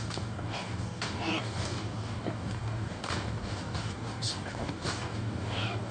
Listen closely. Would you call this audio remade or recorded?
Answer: remade